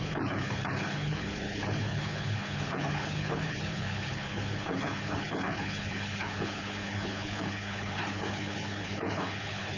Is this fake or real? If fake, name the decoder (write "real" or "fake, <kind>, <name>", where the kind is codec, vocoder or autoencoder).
fake, codec, HILCodec